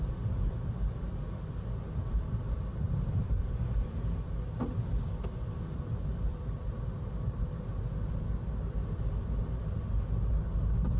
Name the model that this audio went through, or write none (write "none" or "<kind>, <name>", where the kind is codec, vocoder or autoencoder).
none